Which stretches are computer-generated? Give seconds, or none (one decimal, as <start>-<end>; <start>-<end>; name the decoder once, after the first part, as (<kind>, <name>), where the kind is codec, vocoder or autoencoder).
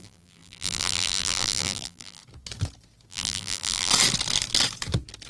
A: 0.0-2.2 (vocoder, BigVGAN v2); 3.1-3.9